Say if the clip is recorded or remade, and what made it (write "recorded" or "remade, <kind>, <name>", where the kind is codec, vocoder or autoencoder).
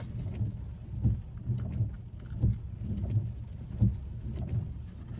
recorded